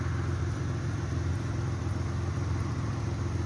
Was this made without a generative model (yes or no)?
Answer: yes